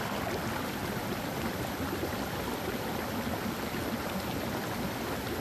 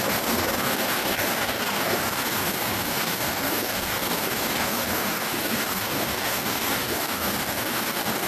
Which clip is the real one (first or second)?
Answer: first